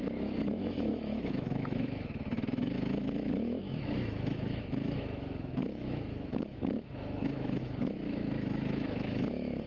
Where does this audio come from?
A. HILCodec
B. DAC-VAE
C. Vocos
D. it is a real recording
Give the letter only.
B